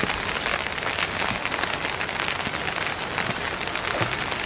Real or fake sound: real